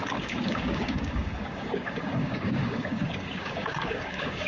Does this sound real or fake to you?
fake